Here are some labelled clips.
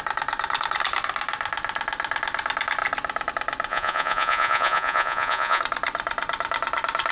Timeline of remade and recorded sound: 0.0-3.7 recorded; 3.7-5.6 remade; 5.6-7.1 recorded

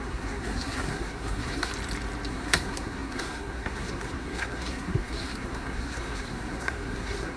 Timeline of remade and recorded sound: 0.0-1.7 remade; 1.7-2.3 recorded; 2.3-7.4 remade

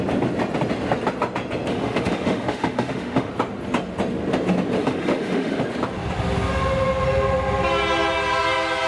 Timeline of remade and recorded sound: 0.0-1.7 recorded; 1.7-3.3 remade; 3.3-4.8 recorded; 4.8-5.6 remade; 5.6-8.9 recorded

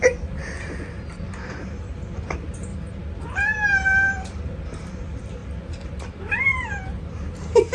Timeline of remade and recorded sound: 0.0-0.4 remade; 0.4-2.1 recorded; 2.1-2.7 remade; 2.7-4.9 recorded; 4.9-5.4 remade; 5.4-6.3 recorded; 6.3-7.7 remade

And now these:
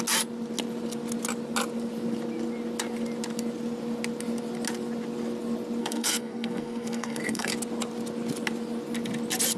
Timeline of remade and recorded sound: 0.0-5.8 recorded; 5.8-7.5 remade; 7.5-9.6 recorded

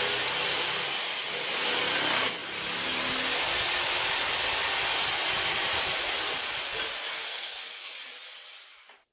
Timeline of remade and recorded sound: 0.0-7.1 recorded; 7.1-7.9 remade; 7.9-9.1 recorded